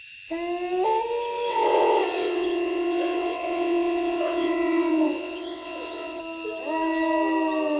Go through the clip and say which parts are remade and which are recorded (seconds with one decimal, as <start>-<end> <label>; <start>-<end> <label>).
0.0-1.5 recorded; 1.5-6.2 remade; 6.2-7.8 recorded